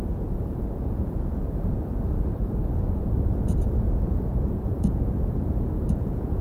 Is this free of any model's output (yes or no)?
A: no